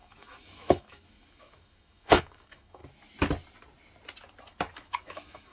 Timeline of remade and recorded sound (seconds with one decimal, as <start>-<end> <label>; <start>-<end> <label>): 0.0-2.8 remade; 2.8-4.8 recorded; 4.8-5.5 remade